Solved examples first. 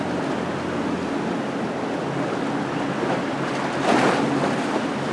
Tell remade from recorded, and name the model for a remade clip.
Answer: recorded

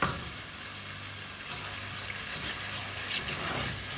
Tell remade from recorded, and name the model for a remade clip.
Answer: recorded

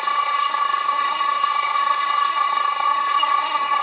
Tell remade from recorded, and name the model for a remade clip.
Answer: remade, codec, SNAC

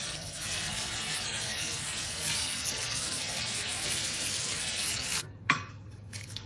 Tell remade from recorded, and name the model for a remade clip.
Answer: remade, codec, SNAC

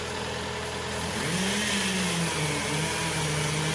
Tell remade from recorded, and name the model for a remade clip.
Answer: recorded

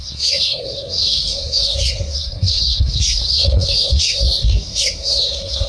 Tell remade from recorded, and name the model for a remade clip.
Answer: remade, codec, SNAC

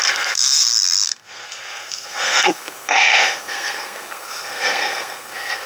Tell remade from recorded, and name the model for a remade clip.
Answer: remade, codec, SNAC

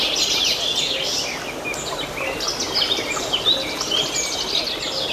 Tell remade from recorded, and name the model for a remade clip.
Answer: recorded